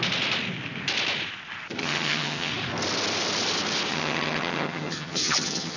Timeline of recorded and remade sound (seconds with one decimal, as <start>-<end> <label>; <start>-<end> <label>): 0.0-1.8 recorded; 1.8-2.5 remade; 2.5-3.9 recorded; 3.9-5.8 remade